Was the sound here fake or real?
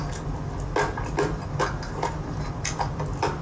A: real